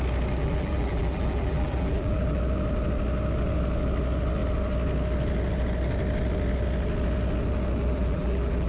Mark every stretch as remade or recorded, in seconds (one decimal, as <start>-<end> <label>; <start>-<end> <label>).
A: 0.0-0.4 recorded; 0.4-2.4 remade; 2.4-7.8 recorded; 7.8-8.7 remade